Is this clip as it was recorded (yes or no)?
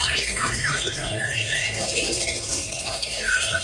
no